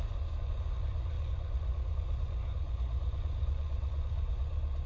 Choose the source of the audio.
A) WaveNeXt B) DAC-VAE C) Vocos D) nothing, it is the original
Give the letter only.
C